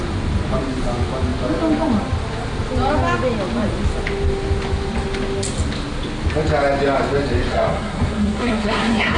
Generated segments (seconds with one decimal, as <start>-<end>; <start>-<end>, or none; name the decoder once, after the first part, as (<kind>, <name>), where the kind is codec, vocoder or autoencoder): 7.5-9.2 (codec, SNAC)

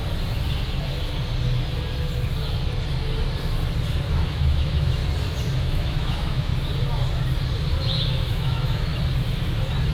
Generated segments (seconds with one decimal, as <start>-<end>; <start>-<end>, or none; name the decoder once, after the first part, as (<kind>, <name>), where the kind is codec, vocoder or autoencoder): 4.1-5.0 (autoencoder, DAC-VAE); 5.6-6.5; 8.3-8.9

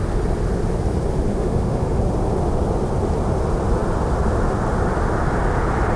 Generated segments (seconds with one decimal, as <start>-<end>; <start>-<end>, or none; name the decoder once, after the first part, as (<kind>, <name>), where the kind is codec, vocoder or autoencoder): 1.3-2.0 (autoencoder, DAC-VAE)